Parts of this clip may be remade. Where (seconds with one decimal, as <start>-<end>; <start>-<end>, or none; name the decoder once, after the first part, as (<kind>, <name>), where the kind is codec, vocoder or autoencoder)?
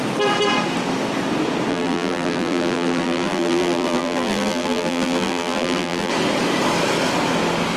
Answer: 1.7-6.1 (vocoder, BigVGAN v2)